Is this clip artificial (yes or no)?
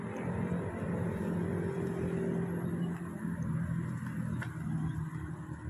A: no